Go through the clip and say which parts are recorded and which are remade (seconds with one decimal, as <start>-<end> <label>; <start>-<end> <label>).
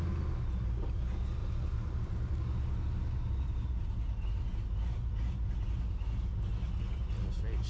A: 0.0-1.4 recorded; 1.4-2.4 remade; 2.4-7.7 recorded